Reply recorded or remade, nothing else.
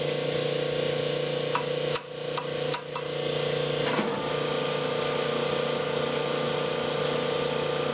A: recorded